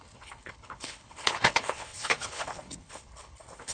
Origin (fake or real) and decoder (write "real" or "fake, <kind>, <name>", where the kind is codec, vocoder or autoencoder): fake, codec, HILCodec